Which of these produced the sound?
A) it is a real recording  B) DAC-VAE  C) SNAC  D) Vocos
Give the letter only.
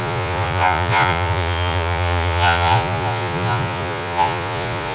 D